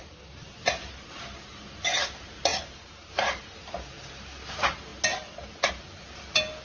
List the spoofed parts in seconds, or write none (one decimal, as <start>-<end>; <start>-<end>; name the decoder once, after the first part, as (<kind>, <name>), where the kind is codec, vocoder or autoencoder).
none